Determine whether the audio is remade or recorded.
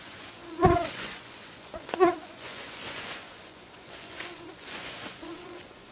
remade